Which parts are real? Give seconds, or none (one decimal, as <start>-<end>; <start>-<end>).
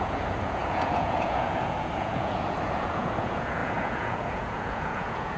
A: none